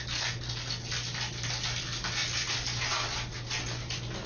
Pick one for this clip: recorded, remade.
recorded